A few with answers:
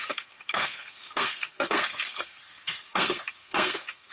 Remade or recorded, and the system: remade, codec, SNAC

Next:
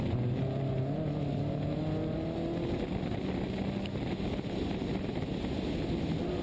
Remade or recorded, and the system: recorded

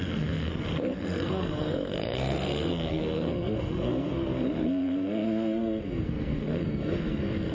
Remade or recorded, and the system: remade, codec, SNAC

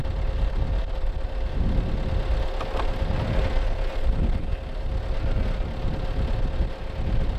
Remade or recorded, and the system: recorded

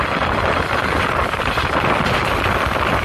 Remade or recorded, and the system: remade, vocoder, BigVGAN v2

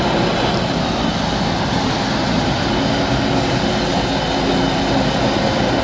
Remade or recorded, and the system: recorded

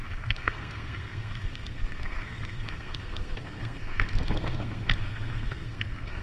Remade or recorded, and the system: remade, codec, SNAC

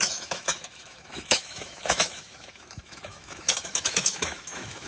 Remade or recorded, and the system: remade, autoencoder, DAC-VAE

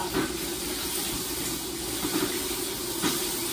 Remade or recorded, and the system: recorded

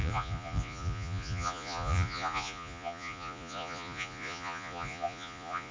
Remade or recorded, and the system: remade, vocoder, Vocos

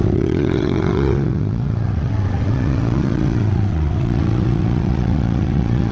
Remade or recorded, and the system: remade, vocoder, WaveNeXt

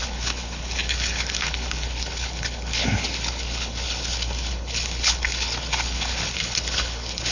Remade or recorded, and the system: remade, codec, HILCodec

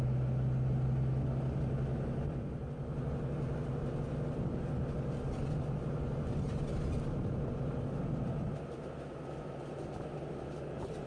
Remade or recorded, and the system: recorded